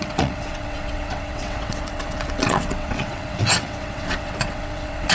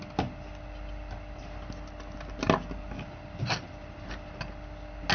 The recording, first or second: second